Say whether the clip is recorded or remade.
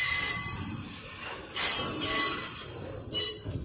remade